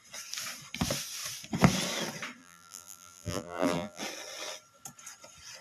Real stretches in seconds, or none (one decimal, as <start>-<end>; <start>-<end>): 0.0-2.4; 4.0-5.6